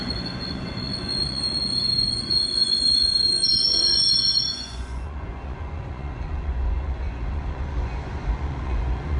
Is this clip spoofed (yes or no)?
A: yes